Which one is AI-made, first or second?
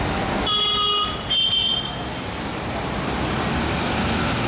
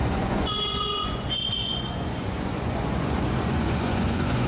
second